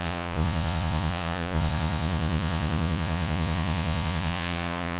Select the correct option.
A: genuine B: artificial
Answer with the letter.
B